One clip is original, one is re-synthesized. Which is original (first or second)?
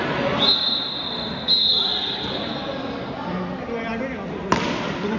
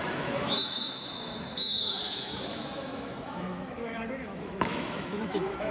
first